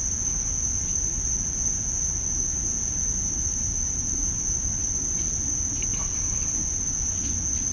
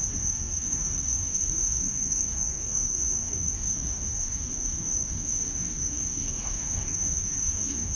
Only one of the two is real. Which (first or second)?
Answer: first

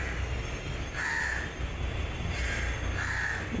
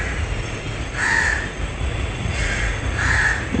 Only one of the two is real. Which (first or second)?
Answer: first